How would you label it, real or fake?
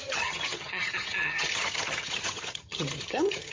fake